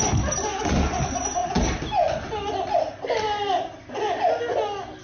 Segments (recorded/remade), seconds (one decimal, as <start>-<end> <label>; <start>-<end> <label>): 0.0-1.4 recorded; 1.4-4.4 remade; 4.4-5.0 recorded